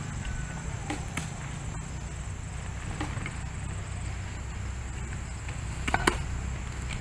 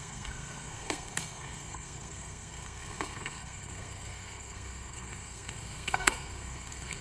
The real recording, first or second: first